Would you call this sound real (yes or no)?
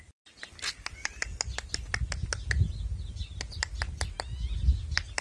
yes